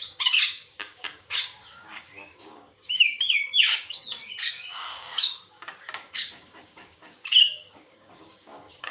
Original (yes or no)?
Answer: no